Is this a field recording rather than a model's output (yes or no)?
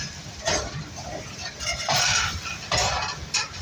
no